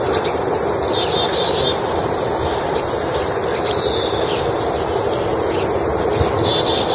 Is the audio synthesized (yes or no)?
no